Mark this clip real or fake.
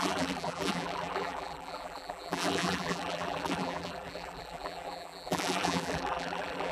fake